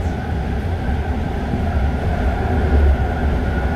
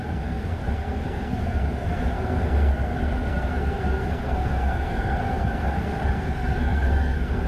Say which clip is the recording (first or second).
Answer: first